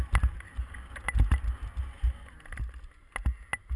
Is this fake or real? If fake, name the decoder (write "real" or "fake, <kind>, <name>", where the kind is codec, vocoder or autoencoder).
real